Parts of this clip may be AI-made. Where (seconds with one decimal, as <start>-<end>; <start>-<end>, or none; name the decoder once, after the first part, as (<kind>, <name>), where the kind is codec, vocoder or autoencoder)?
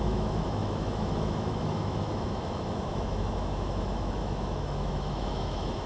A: 0.0-5.9 (autoencoder, DAC-VAE)